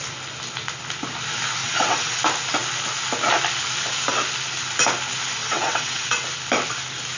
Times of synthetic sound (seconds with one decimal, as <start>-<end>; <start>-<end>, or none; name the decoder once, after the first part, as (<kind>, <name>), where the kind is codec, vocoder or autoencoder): 1.6-2.2 (vocoder, WaveNeXt); 5.4-6.2